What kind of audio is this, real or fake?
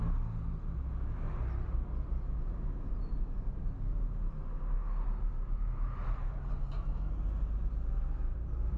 real